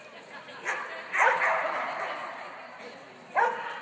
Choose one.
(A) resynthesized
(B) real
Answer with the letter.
B